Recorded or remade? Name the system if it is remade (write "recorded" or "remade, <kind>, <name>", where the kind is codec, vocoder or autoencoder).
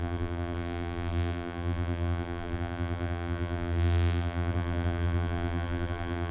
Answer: remade, vocoder, BigVGAN v2